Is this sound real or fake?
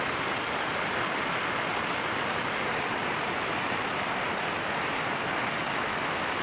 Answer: real